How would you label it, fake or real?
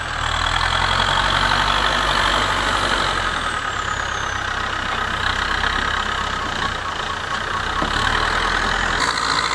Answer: real